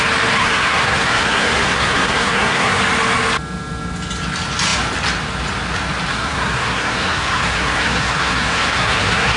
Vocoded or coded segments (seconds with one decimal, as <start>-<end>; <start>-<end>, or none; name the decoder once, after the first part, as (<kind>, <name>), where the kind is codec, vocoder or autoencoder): 0.4-2.8 (codec, SNAC); 6.1-9.4